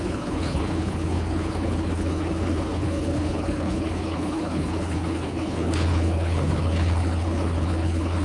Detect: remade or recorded remade